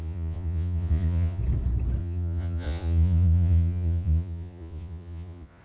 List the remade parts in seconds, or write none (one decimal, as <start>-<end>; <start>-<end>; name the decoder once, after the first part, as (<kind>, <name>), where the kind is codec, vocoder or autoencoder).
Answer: 0.0-1.4 (vocoder, Vocos); 2.0-5.6